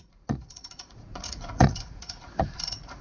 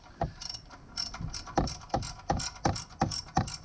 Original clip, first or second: second